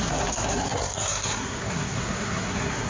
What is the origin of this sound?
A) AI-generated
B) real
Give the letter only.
A